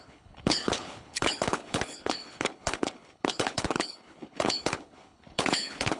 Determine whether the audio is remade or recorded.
remade